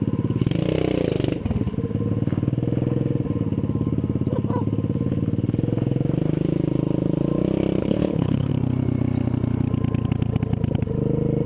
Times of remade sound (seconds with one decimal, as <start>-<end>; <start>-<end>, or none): 7.8-8.5